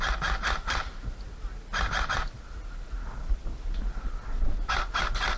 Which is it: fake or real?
real